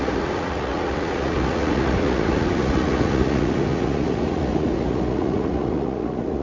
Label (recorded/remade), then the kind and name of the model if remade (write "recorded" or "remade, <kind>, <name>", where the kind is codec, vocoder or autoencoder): remade, vocoder, Vocos